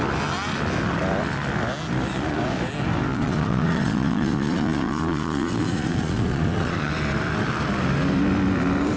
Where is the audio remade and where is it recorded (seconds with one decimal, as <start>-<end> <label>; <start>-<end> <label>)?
0.0-3.1 recorded; 3.1-6.9 remade; 6.9-9.0 recorded